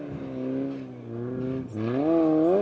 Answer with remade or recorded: recorded